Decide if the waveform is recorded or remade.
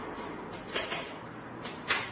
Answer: recorded